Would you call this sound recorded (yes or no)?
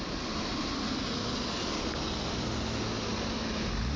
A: yes